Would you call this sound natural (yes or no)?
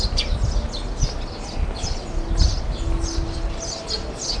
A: yes